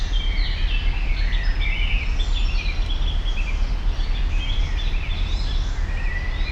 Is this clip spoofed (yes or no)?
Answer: no